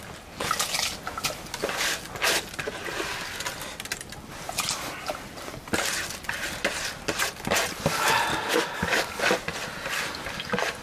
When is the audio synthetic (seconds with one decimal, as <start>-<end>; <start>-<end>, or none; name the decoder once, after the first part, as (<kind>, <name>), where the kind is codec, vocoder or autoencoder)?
8.3-9.2 (codec, DAC)